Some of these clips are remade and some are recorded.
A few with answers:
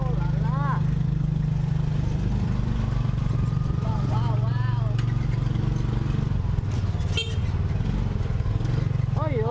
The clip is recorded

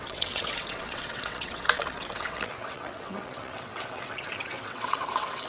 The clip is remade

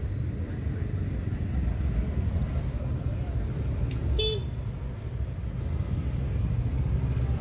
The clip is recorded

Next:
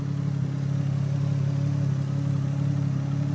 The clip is recorded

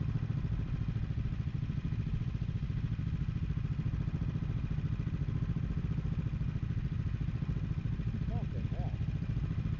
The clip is recorded